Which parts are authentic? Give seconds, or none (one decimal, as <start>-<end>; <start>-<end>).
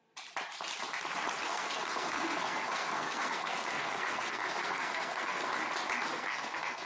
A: 0.0-1.4; 5.5-6.1